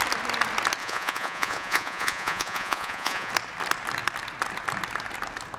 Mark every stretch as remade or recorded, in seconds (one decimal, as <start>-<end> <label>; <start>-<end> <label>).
0.0-0.8 recorded; 0.8-3.3 remade; 3.3-5.6 recorded